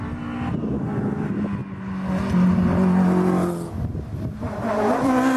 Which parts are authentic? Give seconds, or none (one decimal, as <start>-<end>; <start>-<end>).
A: 0.0-5.4